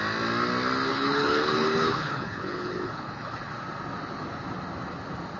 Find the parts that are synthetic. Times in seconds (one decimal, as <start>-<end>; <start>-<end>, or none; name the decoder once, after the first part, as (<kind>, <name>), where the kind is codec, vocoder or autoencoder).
0.9-3.5 (codec, HILCodec)